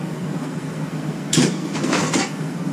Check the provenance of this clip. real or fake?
fake